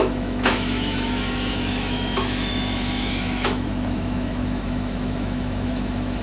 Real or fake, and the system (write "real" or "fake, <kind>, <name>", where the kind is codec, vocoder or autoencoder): fake, autoencoder, DAC-VAE